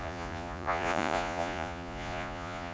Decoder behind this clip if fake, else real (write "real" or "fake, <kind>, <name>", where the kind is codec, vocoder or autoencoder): fake, vocoder, Vocos